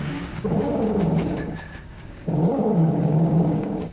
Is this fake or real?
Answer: fake